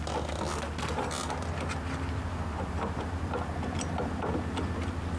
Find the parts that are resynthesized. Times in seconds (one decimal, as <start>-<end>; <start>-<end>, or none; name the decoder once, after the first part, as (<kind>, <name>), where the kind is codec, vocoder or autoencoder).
none